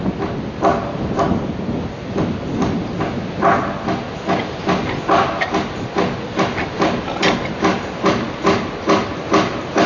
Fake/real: real